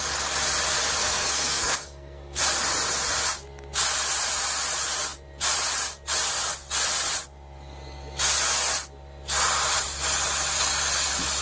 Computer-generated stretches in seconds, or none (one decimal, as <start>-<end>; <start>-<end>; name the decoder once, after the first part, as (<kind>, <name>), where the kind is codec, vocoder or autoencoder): 1.0-2.4 (codec, SNAC)